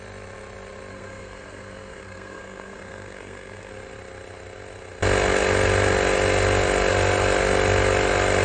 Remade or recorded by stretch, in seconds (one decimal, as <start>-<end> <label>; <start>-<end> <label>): 0.0-0.9 recorded; 0.9-3.7 remade; 3.7-8.4 recorded